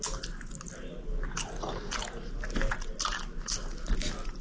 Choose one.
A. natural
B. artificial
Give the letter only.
A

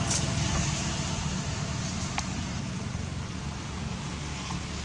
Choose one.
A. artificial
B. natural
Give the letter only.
B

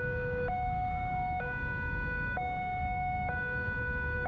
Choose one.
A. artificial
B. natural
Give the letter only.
A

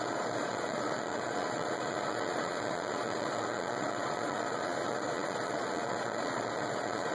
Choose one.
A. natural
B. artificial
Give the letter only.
B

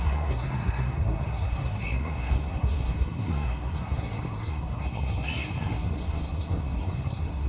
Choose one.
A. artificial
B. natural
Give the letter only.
A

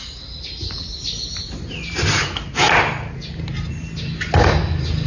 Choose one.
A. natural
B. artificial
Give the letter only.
A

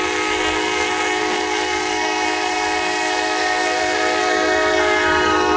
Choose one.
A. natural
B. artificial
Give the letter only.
B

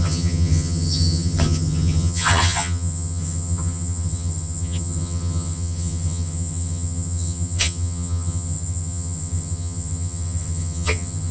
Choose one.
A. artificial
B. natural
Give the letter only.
A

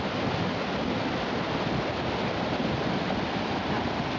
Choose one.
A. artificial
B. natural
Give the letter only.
B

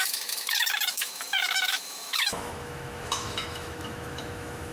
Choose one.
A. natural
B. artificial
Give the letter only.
B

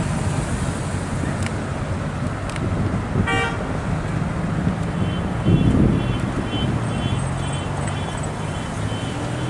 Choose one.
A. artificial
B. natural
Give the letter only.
B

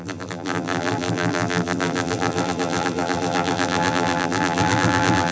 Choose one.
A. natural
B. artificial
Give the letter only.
B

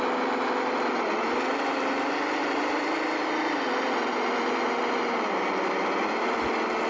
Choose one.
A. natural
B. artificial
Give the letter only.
A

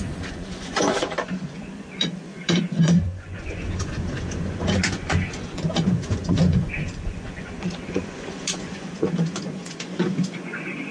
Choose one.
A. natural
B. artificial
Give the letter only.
B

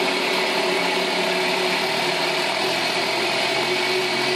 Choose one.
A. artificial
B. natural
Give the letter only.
B